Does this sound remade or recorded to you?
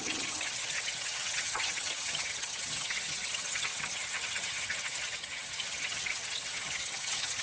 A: remade